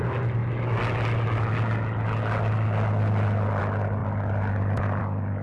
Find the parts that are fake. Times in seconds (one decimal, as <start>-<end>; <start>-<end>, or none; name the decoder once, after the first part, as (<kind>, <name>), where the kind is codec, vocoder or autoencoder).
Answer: none